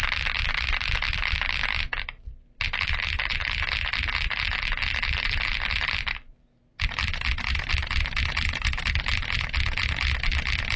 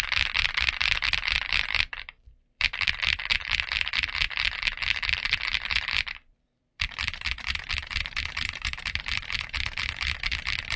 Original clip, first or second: first